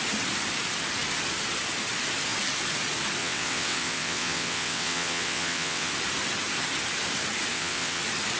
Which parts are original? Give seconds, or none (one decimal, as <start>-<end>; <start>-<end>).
0.0-3.2; 5.9-7.5; 8.0-8.4